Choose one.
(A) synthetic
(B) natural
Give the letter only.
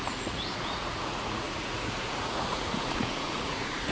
A